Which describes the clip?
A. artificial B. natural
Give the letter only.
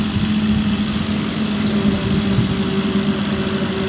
B